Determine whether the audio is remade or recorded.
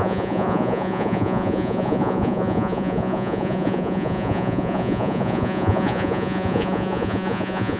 remade